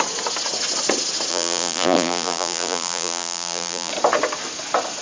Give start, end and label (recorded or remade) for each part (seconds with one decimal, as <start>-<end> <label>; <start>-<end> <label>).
0.0-1.3 recorded; 1.3-3.9 remade; 3.9-5.0 recorded